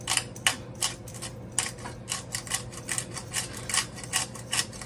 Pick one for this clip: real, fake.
real